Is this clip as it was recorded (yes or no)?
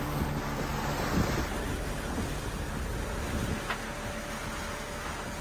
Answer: yes